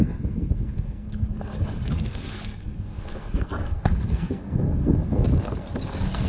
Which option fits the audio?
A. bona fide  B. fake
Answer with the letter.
B